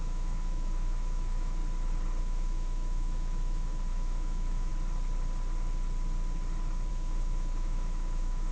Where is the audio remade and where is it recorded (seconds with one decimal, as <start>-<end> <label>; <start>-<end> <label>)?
0.0-1.6 remade; 1.6-2.2 recorded; 2.2-4.7 remade; 4.7-6.9 recorded; 6.9-8.5 remade